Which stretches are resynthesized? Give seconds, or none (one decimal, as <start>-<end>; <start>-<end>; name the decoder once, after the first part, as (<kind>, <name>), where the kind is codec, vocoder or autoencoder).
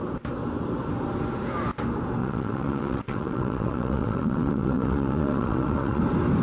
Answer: 2.2-6.0 (vocoder, WaveNeXt)